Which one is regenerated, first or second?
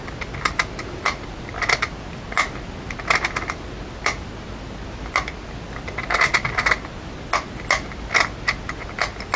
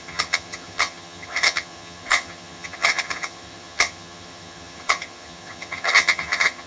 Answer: second